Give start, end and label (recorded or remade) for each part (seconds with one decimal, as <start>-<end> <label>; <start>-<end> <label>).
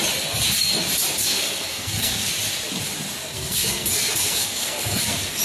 0.0-1.2 recorded; 1.2-2.3 remade; 2.3-3.2 recorded; 3.2-5.4 remade